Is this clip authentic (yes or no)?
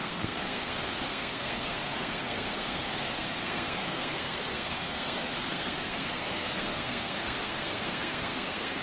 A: no